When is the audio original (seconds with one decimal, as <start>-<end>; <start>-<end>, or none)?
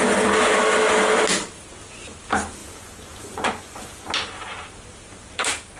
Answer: 0.0-2.6; 3.9-5.8